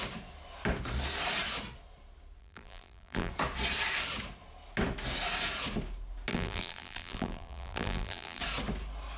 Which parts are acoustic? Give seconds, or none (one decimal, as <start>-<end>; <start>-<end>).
0.0-2.4; 3.3-6.3; 8.4-9.2